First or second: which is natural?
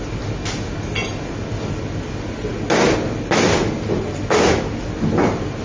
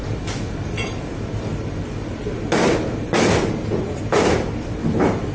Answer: first